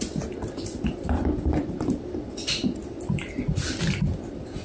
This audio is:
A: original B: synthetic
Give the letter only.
B